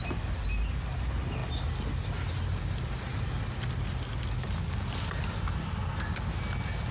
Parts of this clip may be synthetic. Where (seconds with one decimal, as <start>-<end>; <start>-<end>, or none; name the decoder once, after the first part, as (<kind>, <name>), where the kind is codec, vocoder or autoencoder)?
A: none

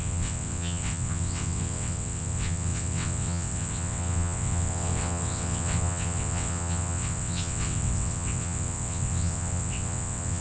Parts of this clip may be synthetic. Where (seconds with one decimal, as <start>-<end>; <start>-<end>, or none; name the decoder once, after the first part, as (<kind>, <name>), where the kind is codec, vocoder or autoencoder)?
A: 0.0-10.4 (vocoder, WaveNeXt)